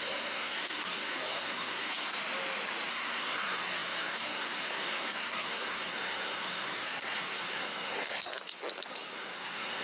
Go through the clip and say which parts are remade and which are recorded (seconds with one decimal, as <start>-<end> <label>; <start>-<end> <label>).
0.0-2.1 remade; 2.1-2.9 recorded; 2.9-8.3 remade; 8.3-8.9 recorded; 8.9-9.8 remade